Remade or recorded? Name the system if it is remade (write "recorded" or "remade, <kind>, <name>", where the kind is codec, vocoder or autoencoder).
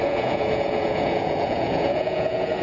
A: remade, vocoder, Vocos